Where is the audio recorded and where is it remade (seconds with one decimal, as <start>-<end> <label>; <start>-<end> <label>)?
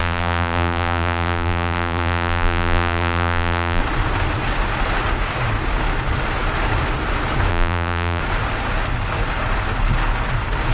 0.0-3.8 remade; 3.8-7.5 recorded; 7.5-8.2 remade; 8.2-10.7 recorded